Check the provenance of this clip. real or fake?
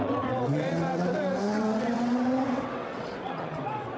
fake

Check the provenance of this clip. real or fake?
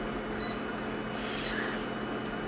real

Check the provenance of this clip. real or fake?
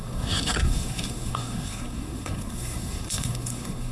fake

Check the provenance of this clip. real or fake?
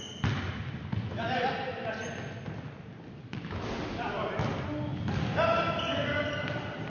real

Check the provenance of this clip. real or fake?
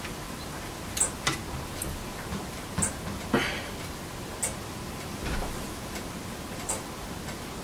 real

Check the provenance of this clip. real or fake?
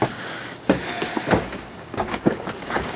fake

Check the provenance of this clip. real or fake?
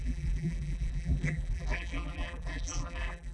fake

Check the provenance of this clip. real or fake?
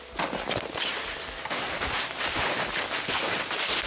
real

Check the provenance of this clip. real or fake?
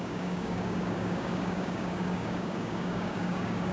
fake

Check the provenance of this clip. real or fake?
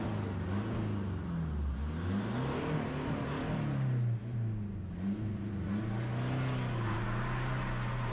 real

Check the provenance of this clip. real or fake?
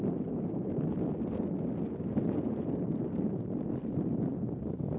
real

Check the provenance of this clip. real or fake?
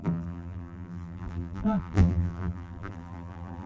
fake